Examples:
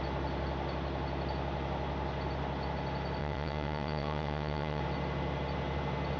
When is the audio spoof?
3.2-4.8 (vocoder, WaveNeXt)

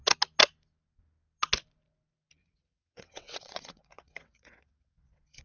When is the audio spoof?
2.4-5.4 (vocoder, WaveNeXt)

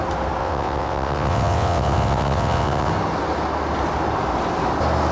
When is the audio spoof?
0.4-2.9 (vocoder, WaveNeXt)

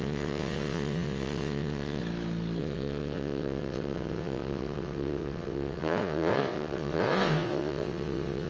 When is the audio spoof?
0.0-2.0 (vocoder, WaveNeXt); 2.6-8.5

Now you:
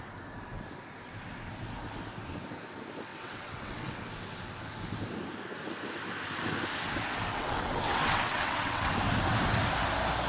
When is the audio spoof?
3.1-4.0 (vocoder, WaveNeXt); 7.3-8.9

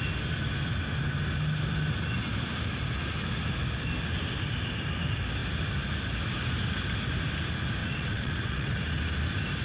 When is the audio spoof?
7.8-8.7 (vocoder, WaveNeXt)

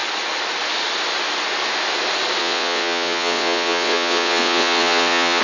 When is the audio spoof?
2.4-5.4 (vocoder, WaveNeXt)

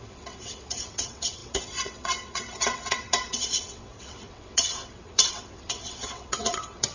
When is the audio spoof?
0.0-6.9 (vocoder, WaveNeXt)